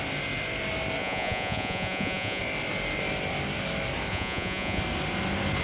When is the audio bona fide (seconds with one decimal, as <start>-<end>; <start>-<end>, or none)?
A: 0.0-1.0; 2.4-4.1; 4.8-5.6